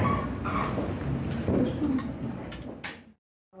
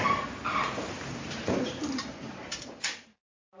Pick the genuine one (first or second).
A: first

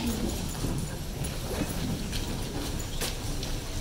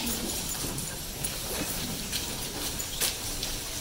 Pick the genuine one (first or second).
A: first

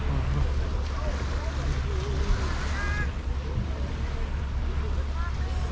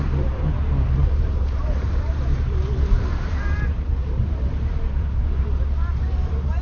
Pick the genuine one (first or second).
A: first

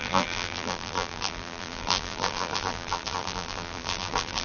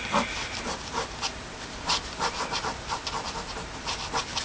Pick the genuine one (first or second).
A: second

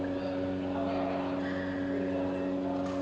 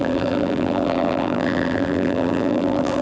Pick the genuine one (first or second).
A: first